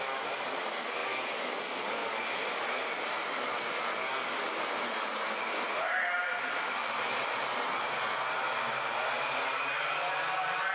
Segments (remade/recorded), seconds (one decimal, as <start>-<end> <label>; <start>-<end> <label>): 0.0-10.7 recorded

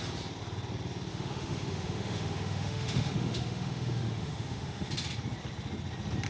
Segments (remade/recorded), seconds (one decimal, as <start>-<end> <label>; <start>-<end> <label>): 0.0-1.1 recorded; 1.1-4.9 remade; 4.9-6.3 recorded

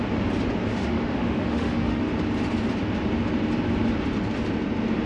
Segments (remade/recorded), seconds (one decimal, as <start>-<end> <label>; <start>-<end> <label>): 0.0-0.7 recorded; 0.7-2.0 remade; 2.0-5.1 recorded

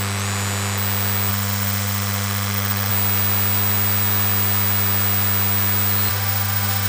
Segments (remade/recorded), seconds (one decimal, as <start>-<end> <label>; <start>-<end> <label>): 0.0-1.3 recorded; 1.3-2.9 remade; 2.9-6.1 recorded; 6.1-6.9 remade

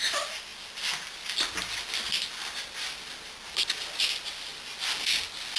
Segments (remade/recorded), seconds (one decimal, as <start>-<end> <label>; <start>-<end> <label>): 0.0-5.6 recorded

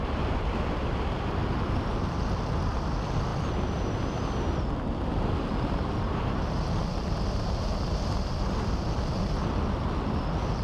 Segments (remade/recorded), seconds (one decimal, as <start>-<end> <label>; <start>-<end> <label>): 0.0-10.6 recorded